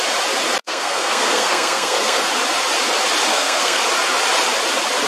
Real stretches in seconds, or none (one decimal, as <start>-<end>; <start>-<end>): 0.0-0.6; 2.2-3.3; 3.8-5.1